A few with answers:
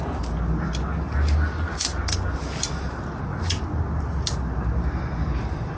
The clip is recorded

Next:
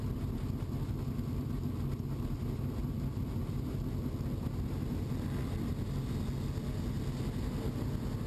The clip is recorded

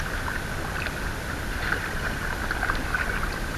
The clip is recorded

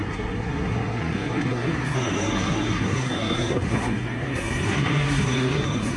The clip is remade